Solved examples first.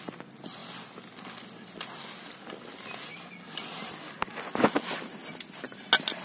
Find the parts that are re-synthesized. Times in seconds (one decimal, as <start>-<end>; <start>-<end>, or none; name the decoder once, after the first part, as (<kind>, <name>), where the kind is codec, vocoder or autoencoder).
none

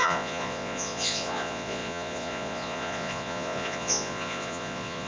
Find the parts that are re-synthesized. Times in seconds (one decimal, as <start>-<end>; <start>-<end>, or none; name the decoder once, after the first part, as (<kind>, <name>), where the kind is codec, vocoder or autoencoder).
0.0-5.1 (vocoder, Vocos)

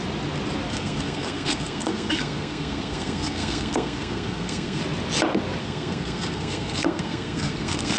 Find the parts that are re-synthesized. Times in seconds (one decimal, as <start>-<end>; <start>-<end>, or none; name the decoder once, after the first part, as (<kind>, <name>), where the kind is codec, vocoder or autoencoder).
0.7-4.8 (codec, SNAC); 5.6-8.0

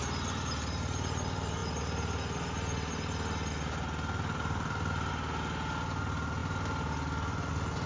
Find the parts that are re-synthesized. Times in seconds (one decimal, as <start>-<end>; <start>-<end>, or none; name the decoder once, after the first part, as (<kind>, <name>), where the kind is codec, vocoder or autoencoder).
none

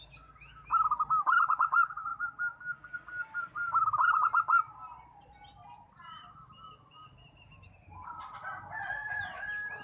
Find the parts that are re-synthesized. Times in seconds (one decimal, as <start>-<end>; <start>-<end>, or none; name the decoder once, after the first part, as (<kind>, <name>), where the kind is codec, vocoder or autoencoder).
none